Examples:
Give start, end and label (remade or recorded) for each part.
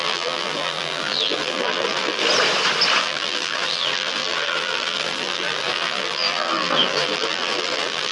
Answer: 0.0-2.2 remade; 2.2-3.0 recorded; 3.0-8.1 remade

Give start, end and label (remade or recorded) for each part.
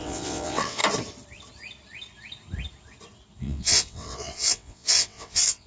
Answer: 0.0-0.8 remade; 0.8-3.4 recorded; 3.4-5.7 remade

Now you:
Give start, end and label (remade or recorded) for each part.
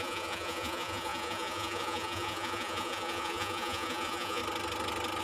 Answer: 0.0-4.4 remade; 4.4-5.2 recorded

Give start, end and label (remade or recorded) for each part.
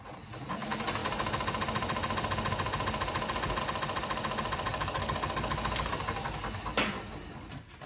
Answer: 0.0-4.7 recorded; 4.7-5.9 remade; 5.9-7.9 recorded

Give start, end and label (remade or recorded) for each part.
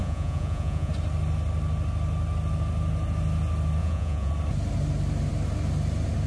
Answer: 0.0-0.9 remade; 0.9-3.8 recorded; 3.8-4.3 remade; 4.3-6.3 recorded